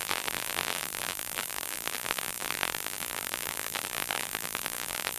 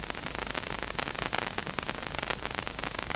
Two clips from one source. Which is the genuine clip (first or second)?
second